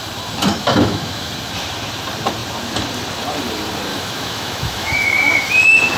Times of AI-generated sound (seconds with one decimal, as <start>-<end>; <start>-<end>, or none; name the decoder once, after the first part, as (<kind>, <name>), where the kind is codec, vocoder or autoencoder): 0.5-1.3 (autoencoder, DAC-VAE); 3.9-5.5